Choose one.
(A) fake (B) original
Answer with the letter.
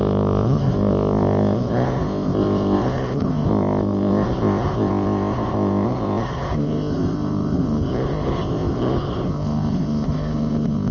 A